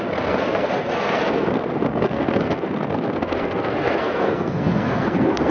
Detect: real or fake fake